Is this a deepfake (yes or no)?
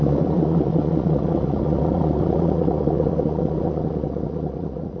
yes